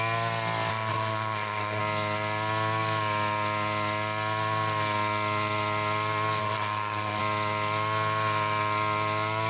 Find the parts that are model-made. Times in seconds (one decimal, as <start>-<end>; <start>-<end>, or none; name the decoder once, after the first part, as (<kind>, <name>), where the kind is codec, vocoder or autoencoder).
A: 0.7-1.8 (codec, SNAC); 6.4-7.2